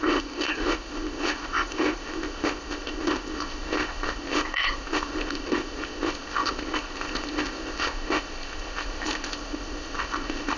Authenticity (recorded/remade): remade